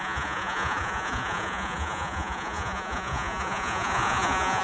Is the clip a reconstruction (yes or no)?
yes